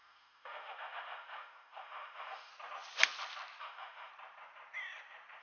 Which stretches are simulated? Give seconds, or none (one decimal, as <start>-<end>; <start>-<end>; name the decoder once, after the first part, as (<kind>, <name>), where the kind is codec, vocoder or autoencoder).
0.0-2.5 (autoencoder, DAC-VAE); 3.6-4.1